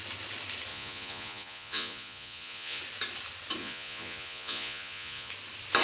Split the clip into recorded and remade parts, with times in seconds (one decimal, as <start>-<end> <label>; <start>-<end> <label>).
0.0-0.7 recorded; 0.7-2.8 remade; 2.8-3.6 recorded; 3.6-5.3 remade; 5.3-5.8 recorded